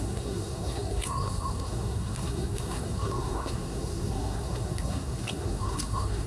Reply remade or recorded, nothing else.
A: remade